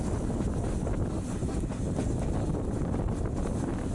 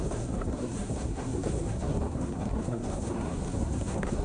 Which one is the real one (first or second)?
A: first